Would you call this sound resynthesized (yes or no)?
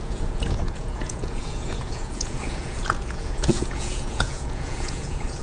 yes